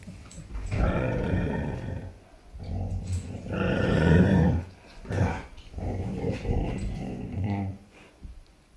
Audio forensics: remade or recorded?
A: remade